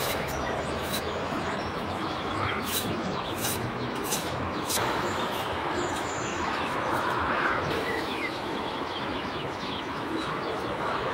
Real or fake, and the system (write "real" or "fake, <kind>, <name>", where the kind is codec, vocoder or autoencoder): fake, autoencoder, DAC-VAE